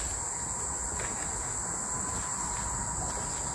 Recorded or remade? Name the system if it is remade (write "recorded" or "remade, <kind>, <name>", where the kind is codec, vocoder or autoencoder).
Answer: recorded